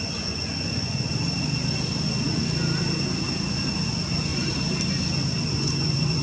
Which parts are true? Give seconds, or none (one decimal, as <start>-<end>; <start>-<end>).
1.1-3.9; 4.3-5.5